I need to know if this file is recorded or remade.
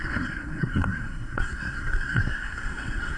remade